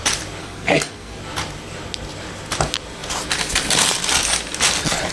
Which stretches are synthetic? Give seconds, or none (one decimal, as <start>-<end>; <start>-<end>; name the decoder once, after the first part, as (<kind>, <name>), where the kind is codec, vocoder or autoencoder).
0.4-1.2 (codec, SNAC)